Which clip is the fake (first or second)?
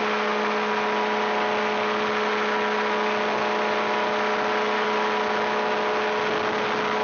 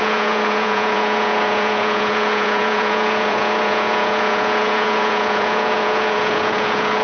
second